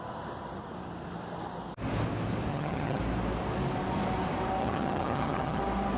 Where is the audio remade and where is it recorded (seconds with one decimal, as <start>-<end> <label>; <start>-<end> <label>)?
0.0-2.5 recorded; 2.5-3.0 remade; 3.0-4.6 recorded; 4.6-5.6 remade; 5.6-6.0 recorded